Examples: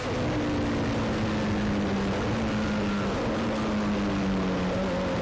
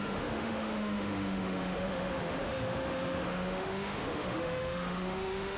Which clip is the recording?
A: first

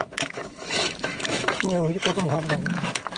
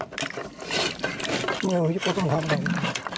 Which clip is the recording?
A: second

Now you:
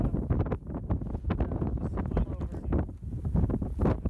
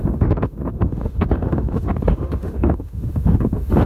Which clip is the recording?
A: first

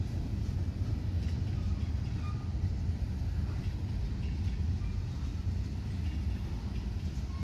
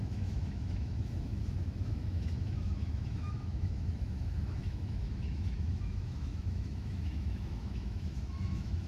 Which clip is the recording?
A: first